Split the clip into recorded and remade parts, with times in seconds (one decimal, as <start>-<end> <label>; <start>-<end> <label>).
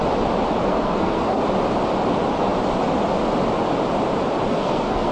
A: 0.0-0.6 recorded; 0.6-1.4 remade; 1.4-4.5 recorded; 4.5-5.1 remade